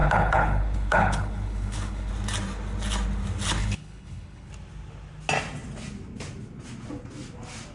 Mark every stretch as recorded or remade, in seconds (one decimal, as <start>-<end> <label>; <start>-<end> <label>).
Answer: 0.0-2.1 remade; 2.1-3.6 recorded; 3.6-4.5 remade; 4.5-7.7 recorded